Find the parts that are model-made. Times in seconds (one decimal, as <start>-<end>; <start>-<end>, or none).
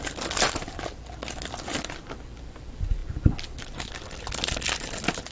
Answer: none